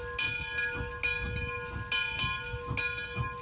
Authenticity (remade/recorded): recorded